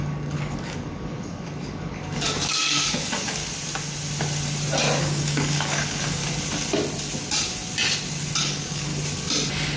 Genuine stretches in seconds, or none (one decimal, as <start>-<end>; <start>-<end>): 3.4-5.0; 6.2-8.4; 8.9-9.8